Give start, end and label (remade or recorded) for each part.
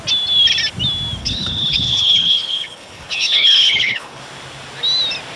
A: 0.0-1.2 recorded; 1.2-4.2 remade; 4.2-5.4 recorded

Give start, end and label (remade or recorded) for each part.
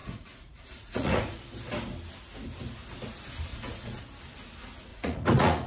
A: 0.0-1.4 remade; 1.4-3.5 recorded; 3.5-4.0 remade; 4.0-4.9 recorded; 4.9-5.7 remade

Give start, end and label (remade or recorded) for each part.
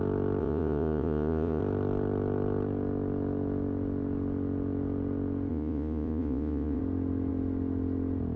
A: 0.0-0.4 recorded; 0.4-1.6 remade; 1.6-5.5 recorded; 5.5-6.8 remade; 6.8-8.4 recorded